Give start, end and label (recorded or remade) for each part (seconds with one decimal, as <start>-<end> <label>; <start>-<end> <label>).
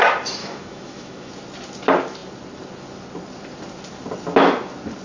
0.0-0.4 recorded; 0.4-1.3 remade; 1.3-5.0 recorded